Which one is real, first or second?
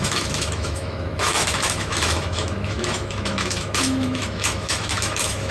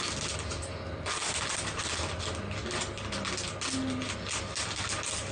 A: second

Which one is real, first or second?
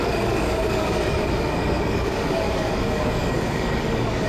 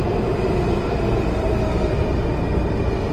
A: second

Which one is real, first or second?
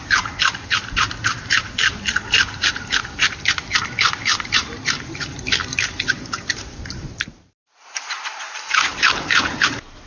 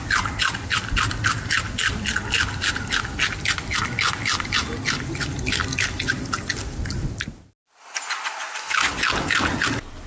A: second